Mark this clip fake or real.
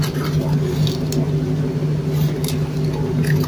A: real